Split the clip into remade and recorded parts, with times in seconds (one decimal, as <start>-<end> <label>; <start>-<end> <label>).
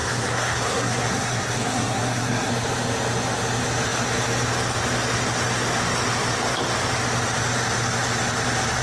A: 0.0-2.5 remade; 2.5-8.8 recorded